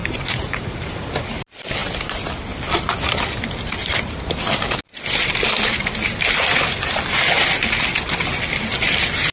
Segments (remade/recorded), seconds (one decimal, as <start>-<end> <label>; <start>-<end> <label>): 0.0-1.2 remade; 1.2-9.3 recorded